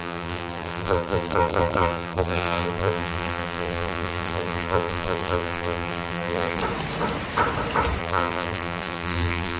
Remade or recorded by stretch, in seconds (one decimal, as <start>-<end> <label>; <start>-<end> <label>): 0.0-6.6 remade; 6.6-8.0 recorded; 8.0-9.6 remade